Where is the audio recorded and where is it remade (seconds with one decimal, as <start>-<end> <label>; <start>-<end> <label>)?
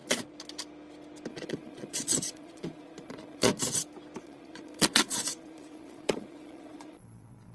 0.0-1.3 recorded; 1.3-3.5 remade; 3.5-4.2 recorded; 4.2-7.5 remade